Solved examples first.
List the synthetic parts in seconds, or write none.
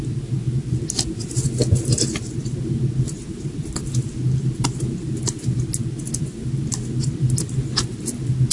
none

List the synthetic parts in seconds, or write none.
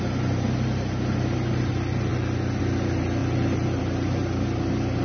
none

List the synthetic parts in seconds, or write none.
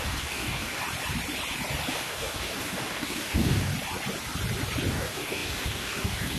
0.0-0.8 (codec, DAC); 1.9-3.7; 4.9-6.4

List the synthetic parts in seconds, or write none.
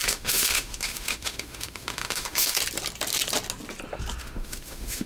0.0-2.6 (autoencoder, DAC-VAE); 4.2-5.1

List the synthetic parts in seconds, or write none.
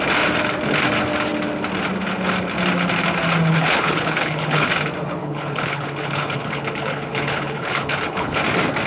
3.5-4.7 (codec, HILCodec); 5.2-8.4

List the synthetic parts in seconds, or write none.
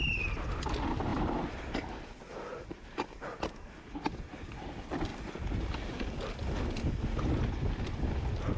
1.1-1.9 (vocoder, BigVGAN v2); 2.5-3.5